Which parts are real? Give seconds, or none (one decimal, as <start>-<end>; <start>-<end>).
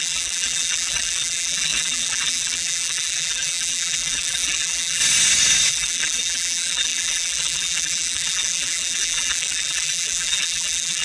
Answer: 5.0-5.7